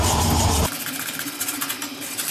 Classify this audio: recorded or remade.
recorded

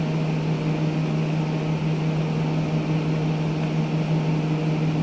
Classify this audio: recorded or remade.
recorded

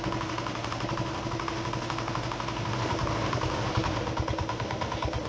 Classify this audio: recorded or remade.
recorded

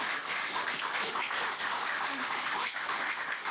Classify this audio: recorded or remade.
remade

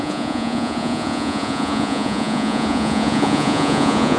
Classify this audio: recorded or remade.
remade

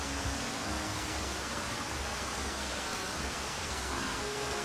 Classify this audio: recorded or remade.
remade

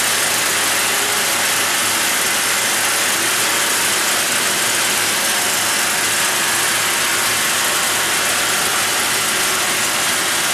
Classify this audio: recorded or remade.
recorded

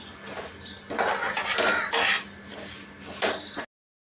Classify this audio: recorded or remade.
recorded